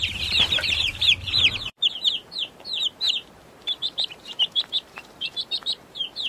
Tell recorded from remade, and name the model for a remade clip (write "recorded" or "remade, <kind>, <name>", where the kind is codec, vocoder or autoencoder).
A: remade, vocoder, BigVGAN v2